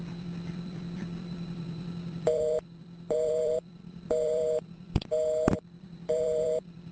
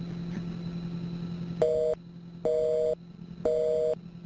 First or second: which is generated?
first